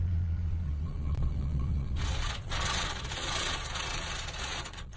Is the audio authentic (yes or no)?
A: no